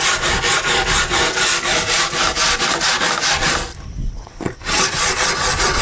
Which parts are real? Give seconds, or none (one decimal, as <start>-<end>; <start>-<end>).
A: 0.0-4.0